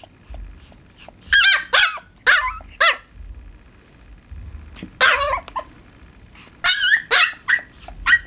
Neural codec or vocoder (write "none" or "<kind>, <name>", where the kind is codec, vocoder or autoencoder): none